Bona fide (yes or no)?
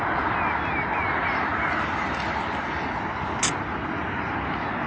yes